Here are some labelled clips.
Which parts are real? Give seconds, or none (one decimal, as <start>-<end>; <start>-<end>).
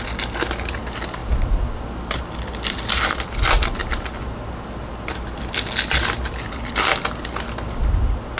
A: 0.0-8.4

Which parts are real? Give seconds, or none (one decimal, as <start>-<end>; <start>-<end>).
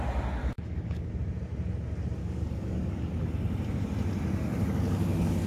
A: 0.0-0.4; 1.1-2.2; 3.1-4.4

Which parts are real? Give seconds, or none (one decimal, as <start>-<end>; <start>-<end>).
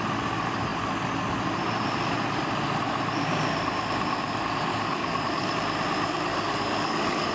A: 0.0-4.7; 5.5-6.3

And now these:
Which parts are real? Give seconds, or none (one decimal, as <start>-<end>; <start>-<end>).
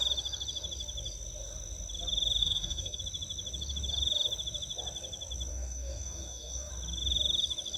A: 0.0-2.4; 3.0-5.5; 6.7-7.8